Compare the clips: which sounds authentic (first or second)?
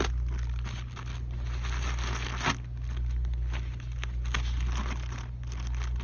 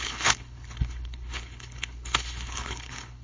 first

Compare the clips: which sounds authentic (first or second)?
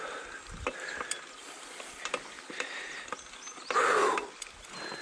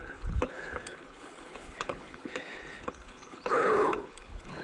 first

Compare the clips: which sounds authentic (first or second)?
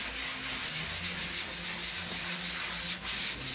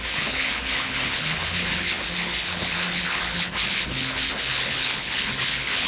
first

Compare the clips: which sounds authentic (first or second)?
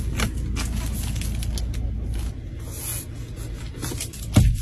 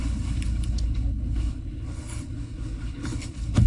first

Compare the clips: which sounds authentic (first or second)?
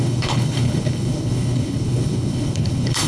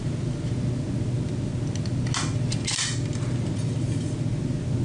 second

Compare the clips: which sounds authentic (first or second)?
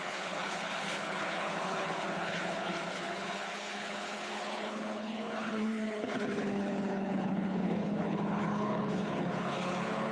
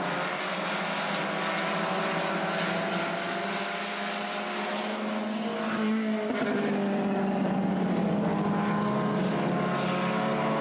second